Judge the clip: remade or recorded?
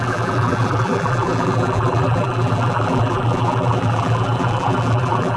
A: remade